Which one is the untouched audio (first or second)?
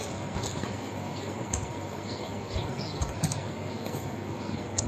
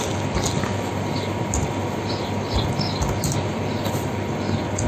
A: second